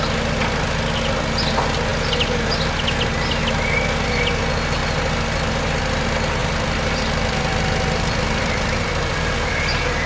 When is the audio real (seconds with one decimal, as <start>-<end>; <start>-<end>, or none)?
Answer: 0.0-6.4